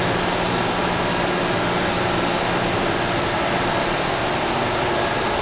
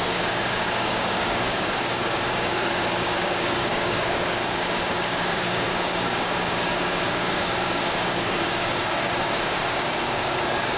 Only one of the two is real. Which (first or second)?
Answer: first